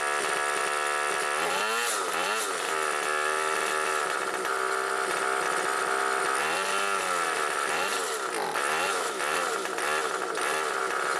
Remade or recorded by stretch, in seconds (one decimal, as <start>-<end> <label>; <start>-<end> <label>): 0.0-11.2 recorded